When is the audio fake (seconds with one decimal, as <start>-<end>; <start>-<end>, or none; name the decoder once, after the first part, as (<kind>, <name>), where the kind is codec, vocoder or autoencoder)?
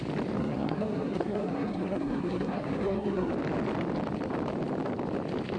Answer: 0.4-3.3 (codec, SNAC)